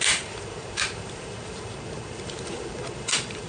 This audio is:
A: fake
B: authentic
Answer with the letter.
A